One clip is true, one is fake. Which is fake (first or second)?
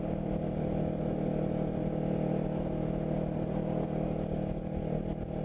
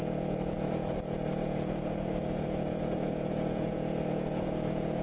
second